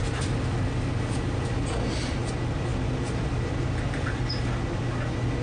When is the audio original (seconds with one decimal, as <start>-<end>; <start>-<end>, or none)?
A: 0.0-5.4